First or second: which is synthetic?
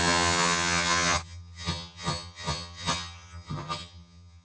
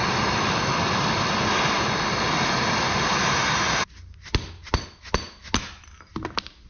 first